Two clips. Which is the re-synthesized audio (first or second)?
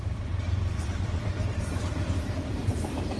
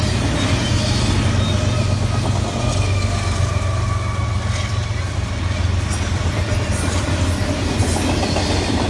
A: first